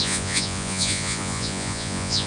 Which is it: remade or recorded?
remade